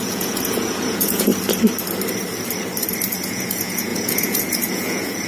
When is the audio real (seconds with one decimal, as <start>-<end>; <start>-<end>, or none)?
1.3-3.2